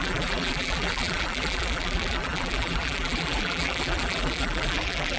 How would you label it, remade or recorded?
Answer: remade